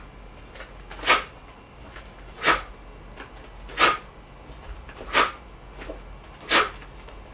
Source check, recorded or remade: recorded